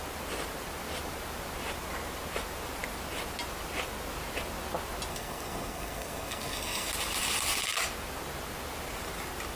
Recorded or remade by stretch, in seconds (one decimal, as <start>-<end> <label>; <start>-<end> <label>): 0.0-5.1 recorded; 5.1-6.9 remade; 6.9-9.6 recorded